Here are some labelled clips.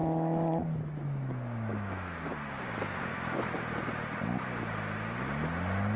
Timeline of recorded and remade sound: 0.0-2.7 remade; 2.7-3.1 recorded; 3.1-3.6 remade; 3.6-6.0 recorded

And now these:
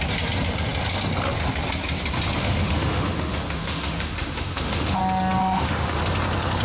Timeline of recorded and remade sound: 0.0-2.4 recorded; 2.4-5.0 remade; 5.0-5.4 recorded; 5.4-6.0 remade; 6.0-6.6 recorded

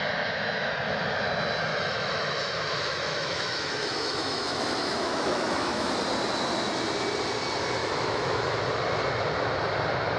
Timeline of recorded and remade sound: 0.0-1.7 recorded; 1.7-5.9 remade; 5.9-7.8 recorded; 7.8-8.6 remade; 8.6-10.2 recorded

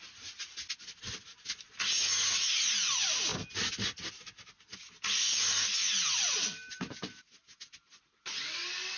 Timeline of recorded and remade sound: 0.0-9.0 recorded